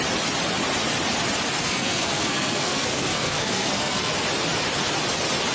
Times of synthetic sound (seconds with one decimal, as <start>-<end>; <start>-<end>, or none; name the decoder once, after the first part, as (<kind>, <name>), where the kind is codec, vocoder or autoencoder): 1.6-4.1 (codec, SNAC)